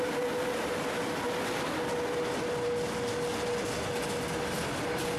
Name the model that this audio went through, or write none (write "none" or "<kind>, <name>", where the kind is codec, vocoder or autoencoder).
none